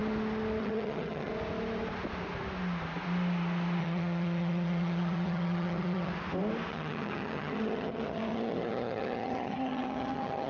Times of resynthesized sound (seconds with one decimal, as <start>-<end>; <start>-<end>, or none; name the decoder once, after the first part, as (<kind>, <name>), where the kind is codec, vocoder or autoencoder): 0.6-1.3 (vocoder, HiFi-GAN); 3.8-6.1; 6.7-10.5